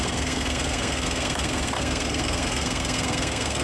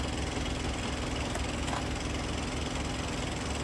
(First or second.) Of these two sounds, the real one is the second